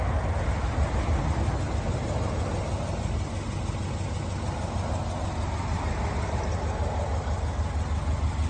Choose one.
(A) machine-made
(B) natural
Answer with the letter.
B